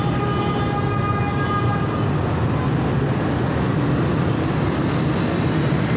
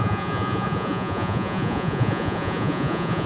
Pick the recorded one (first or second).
first